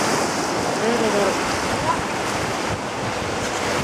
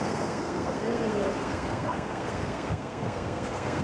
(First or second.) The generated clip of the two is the second